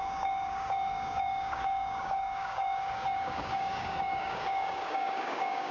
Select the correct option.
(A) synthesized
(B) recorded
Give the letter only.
A